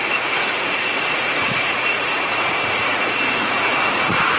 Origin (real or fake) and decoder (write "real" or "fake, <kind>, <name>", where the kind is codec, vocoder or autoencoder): fake, vocoder, Vocos